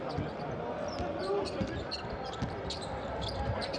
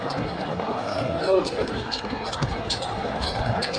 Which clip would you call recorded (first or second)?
first